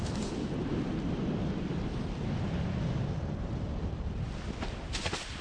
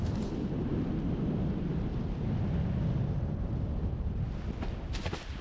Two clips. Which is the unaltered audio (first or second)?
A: second